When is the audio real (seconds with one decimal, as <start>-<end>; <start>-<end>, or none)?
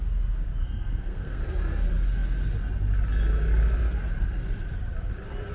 0.0-0.6; 1.4-5.5